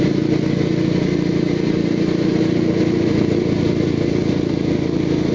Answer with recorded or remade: recorded